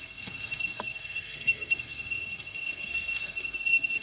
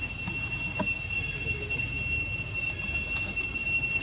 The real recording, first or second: second